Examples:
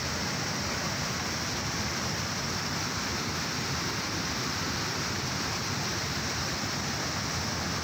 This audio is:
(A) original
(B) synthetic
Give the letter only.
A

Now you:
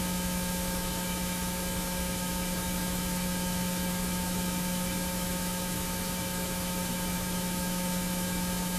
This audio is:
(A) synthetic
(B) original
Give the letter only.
A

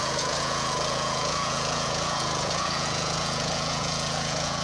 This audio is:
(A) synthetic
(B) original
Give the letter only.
A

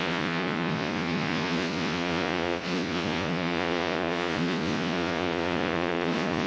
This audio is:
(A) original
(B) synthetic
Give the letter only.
B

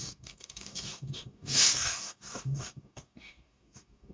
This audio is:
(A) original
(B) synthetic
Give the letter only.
B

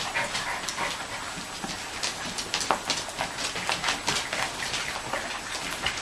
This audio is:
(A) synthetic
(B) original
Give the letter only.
B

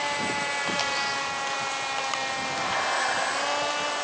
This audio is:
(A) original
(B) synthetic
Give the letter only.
A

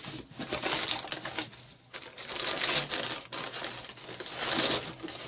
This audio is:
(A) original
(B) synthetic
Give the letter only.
A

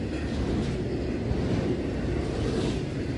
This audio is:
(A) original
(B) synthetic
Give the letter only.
A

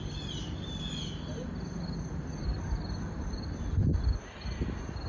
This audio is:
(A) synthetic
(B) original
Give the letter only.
B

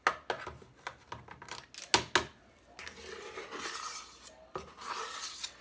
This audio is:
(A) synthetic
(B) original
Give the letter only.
B